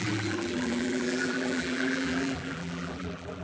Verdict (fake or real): fake